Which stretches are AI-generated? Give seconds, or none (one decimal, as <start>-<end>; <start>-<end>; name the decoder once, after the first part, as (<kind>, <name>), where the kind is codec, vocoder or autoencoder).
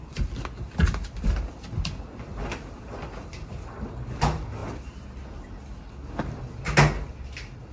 none